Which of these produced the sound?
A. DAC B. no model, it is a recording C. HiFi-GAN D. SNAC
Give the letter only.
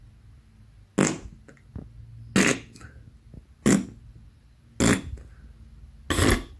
B